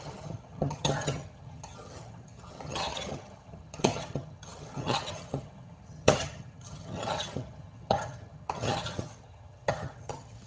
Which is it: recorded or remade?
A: remade